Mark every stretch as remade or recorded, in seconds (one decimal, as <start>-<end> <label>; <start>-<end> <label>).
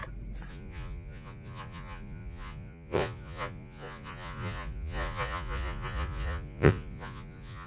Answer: 0.0-0.5 recorded; 0.5-7.7 remade